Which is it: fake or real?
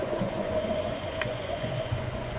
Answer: fake